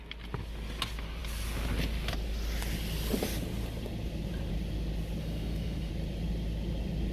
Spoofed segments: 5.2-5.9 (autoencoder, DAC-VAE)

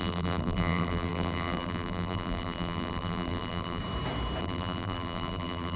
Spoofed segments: 0.0-3.8 (vocoder, BigVGAN v2); 4.4-5.8